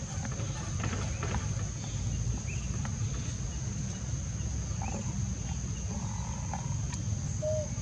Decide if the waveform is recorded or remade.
recorded